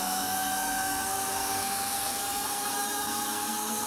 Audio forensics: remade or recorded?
remade